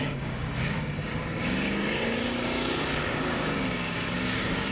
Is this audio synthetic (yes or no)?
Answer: yes